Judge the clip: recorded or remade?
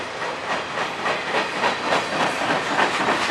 recorded